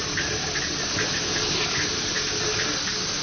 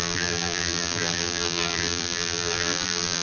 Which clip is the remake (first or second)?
second